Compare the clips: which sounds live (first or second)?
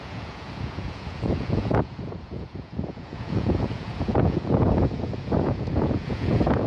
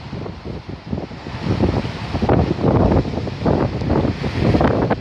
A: second